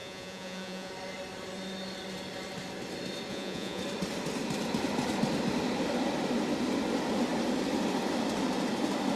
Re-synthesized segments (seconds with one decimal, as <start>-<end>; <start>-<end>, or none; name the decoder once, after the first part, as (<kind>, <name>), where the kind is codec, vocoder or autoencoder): 0.0-0.9 (vocoder, Vocos); 3.3-3.8

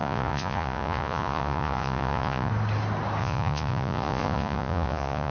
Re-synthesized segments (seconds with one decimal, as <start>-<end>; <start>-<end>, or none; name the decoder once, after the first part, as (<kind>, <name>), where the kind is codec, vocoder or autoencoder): 0.0-2.5 (vocoder, Vocos); 3.2-5.3

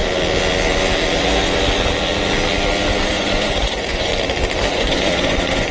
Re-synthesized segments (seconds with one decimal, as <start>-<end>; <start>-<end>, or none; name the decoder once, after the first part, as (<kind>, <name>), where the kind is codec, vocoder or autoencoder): 3.1-4.1 (vocoder, Vocos); 4.7-5.7

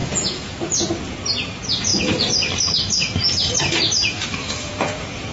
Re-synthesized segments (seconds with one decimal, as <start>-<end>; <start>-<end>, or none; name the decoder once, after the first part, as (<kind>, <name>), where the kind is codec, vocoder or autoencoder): 0.0-0.9 (vocoder, Vocos); 4.4-5.3

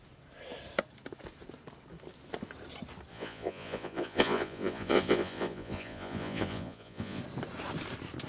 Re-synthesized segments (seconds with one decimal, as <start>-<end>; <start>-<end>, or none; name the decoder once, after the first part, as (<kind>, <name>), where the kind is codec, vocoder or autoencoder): 3.1-7.2 (vocoder, Vocos)